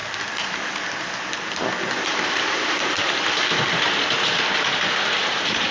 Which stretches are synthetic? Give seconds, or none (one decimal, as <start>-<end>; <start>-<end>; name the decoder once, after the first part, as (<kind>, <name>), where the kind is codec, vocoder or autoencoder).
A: 1.9-5.7 (vocoder, BigVGAN v2)